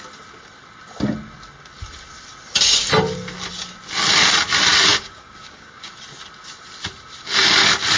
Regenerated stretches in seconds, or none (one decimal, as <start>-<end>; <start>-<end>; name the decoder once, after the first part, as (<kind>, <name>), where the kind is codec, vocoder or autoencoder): 4.9-5.9 (codec, DAC)